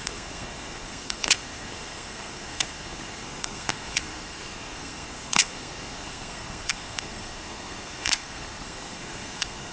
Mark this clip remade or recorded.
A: remade